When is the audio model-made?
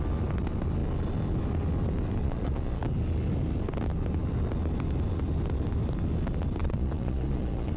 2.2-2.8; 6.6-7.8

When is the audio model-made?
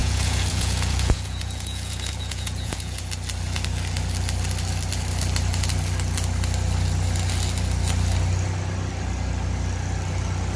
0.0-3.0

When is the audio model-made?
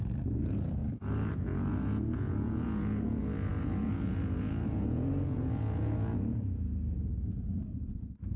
0.0-8.4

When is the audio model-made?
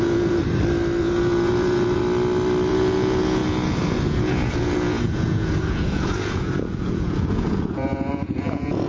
0.0-0.4; 1.0-2.0; 2.7-8.9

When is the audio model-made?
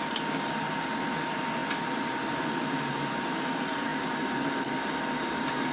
none